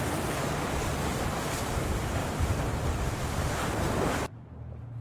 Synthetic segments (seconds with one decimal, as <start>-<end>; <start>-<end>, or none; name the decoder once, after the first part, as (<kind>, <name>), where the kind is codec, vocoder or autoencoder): 2.2-3.9 (vocoder, BigVGAN v2)